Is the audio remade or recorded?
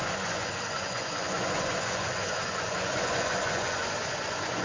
remade